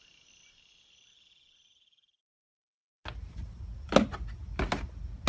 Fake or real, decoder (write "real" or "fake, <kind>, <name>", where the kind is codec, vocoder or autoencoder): real